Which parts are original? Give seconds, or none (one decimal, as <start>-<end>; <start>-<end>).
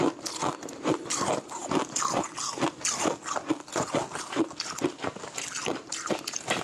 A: 0.0-6.6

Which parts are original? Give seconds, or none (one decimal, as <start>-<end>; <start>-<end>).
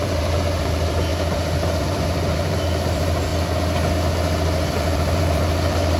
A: 1.1-1.8; 3.3-4.7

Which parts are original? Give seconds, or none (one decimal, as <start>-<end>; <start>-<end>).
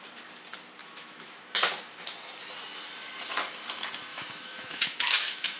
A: 0.0-0.8; 1.4-4.1